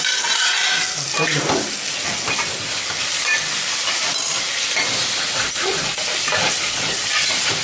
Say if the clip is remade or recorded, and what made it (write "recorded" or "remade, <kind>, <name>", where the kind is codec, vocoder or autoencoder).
recorded